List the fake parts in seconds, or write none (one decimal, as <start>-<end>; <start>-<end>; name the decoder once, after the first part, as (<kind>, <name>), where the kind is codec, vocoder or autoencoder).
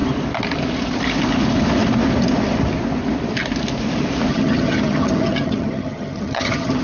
4.3-6.8 (vocoder, HiFi-GAN)